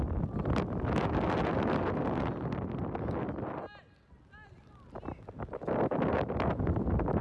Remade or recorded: recorded